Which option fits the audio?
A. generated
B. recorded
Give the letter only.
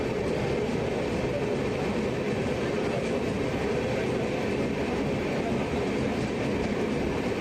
B